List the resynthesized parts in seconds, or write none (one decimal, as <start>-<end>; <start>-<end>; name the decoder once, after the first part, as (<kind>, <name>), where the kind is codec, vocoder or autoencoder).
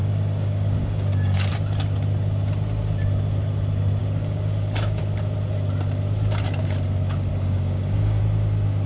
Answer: 0.0-1.5 (codec, DAC); 4.0-5.0; 7.3-8.2